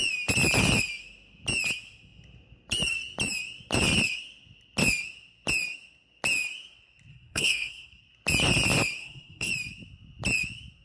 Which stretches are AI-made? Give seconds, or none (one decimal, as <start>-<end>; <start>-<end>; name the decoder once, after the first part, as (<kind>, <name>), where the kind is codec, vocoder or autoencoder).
7.1-8.0 (codec, SNAC); 9.0-9.5